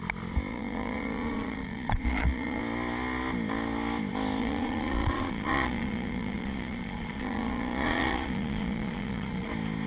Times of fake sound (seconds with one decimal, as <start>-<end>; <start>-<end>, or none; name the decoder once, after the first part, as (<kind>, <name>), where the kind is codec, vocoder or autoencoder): 0.5-2.6 (vocoder, Vocos); 4.4-9.5